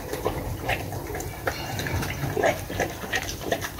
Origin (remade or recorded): remade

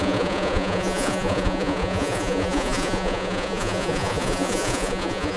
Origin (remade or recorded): remade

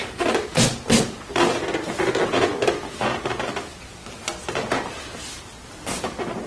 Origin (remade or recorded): recorded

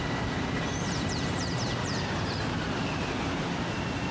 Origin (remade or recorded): remade